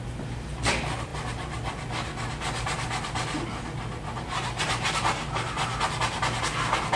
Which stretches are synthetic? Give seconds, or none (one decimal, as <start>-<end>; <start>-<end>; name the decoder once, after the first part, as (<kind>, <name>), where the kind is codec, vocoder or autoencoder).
none